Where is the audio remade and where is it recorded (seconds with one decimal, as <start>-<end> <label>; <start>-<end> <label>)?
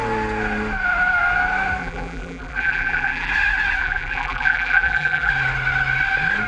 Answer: 0.0-1.8 recorded; 1.8-3.3 remade; 3.3-3.8 recorded; 3.8-5.3 remade; 5.3-6.5 recorded